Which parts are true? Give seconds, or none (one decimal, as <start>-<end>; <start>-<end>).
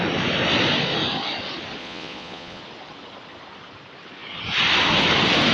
0.0-1.8; 2.6-5.5